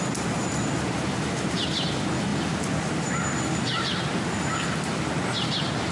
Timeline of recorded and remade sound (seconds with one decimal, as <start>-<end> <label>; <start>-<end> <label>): 0.0-5.9 recorded